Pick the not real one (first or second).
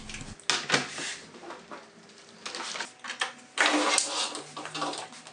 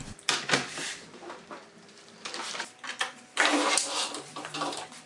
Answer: second